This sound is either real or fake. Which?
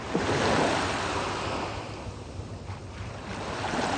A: real